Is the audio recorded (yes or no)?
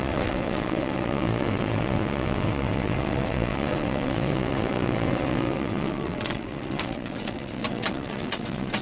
no